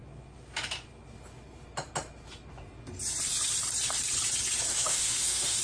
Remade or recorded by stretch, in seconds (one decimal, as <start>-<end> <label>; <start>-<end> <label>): 0.0-4.7 recorded; 4.7-5.6 remade